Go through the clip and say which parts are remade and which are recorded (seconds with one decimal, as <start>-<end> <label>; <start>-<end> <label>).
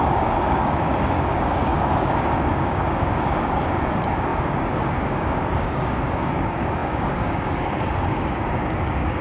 0.0-9.2 remade